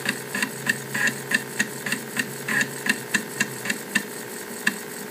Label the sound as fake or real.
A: fake